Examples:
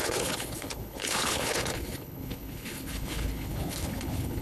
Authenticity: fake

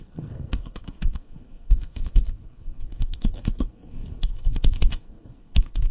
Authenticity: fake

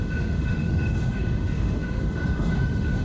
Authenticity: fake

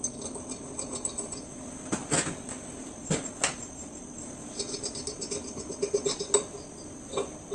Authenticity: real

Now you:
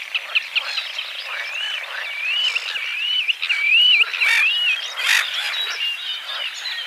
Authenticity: real